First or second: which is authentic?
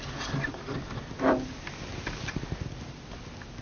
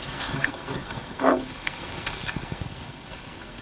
first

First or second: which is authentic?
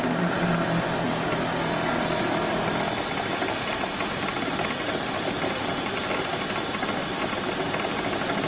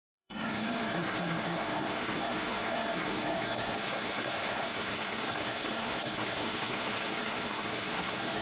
first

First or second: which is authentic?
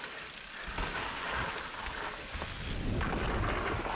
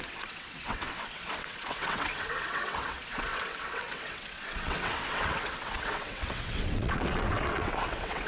first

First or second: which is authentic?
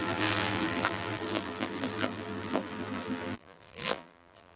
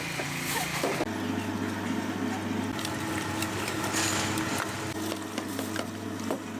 second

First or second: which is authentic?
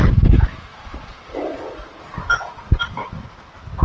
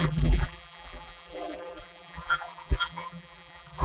first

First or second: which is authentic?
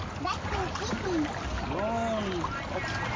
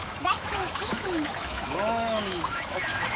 first